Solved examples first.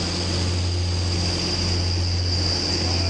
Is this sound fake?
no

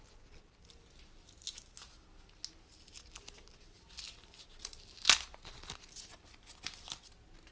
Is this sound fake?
no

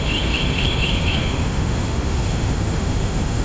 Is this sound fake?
yes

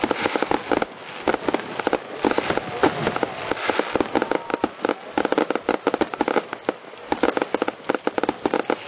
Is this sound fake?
no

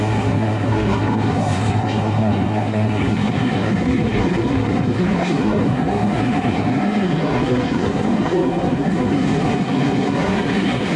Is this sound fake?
yes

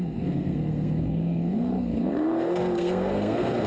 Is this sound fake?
yes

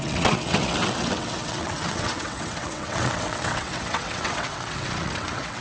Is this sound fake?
yes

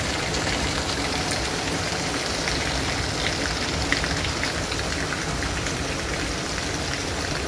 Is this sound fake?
yes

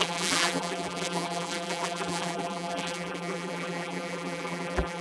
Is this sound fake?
yes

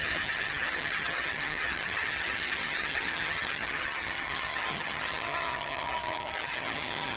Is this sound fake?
yes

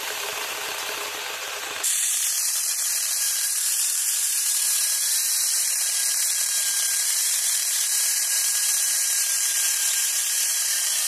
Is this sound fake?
yes